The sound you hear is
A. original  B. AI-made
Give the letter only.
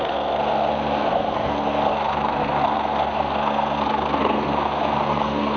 B